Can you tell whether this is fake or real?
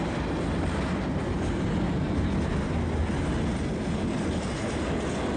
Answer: real